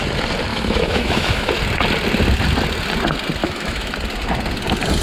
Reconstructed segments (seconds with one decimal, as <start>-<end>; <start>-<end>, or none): 0.5-1.5; 3.4-3.9